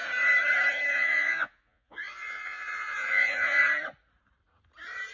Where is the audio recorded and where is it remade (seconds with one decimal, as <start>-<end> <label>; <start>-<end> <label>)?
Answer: 0.0-0.9 recorded; 0.9-3.6 remade; 3.6-5.1 recorded